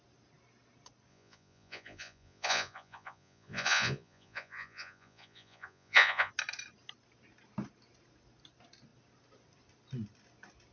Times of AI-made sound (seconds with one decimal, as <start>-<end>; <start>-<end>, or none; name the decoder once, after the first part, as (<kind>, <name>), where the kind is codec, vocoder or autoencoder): 1.1-6.3 (vocoder, Vocos)